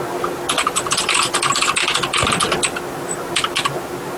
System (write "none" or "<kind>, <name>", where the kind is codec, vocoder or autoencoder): none